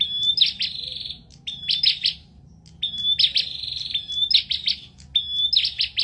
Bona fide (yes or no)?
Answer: yes